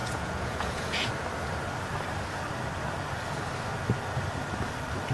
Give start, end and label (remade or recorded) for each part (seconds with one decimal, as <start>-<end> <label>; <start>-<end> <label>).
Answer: 0.0-1.1 remade; 1.1-5.1 recorded